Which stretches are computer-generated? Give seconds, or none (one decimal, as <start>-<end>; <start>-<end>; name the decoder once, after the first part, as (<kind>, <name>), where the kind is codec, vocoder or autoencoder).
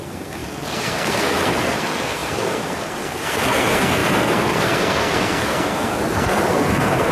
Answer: 0.0-7.1 (codec, SNAC)